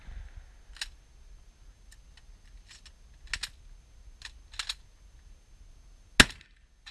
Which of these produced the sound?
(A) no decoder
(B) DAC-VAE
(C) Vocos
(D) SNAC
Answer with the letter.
A